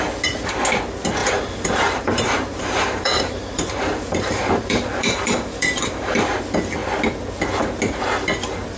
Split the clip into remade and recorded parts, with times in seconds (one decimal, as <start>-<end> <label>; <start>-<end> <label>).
0.0-1.2 recorded; 1.2-6.3 remade; 6.3-8.8 recorded